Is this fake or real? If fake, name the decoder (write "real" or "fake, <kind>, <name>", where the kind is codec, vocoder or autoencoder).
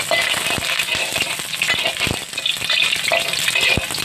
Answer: real